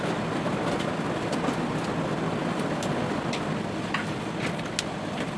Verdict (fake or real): real